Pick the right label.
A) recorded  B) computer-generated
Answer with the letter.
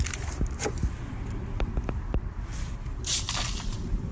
B